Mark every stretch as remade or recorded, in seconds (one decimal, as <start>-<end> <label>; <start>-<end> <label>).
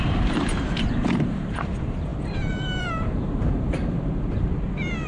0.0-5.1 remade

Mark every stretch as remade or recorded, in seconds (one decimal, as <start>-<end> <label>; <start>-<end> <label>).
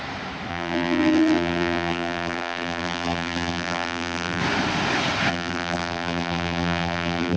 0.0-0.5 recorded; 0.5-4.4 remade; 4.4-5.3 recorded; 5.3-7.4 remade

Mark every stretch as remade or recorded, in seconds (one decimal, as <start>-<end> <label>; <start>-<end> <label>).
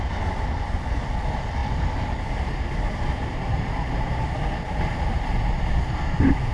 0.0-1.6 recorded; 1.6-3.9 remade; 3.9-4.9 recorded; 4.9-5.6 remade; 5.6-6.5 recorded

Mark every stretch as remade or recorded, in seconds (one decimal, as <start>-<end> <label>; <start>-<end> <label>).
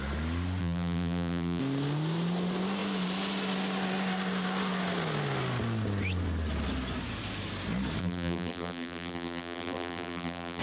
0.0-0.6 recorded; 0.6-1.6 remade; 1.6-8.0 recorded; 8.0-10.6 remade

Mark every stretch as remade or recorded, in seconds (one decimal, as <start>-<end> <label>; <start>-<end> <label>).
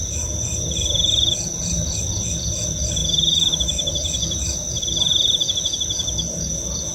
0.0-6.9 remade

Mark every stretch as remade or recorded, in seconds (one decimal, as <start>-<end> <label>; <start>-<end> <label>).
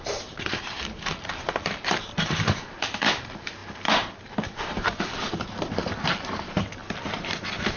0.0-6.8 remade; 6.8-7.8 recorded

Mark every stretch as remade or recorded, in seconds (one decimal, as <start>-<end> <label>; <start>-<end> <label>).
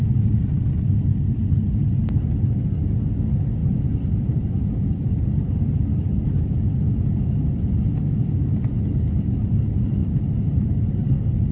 0.0-3.6 recorded; 3.6-6.4 remade; 6.4-7.9 recorded; 7.9-8.7 remade; 8.7-10.0 recorded; 10.0-11.1 remade; 11.1-11.5 recorded